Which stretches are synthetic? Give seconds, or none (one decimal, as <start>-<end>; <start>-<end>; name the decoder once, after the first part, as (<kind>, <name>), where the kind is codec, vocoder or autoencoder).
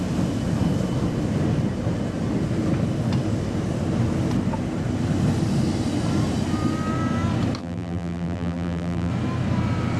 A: 7.6-9.1 (vocoder, BigVGAN v2)